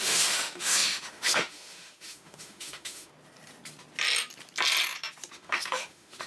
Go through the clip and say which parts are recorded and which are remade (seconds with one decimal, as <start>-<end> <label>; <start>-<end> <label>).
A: 0.0-3.1 remade; 3.1-5.3 recorded; 5.3-6.3 remade